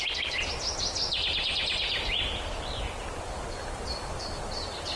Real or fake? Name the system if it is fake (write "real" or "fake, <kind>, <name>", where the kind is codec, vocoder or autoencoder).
real